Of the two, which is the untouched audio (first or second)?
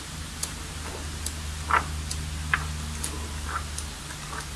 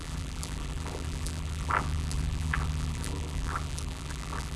first